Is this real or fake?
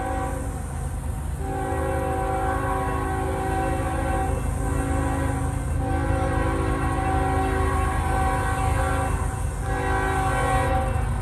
real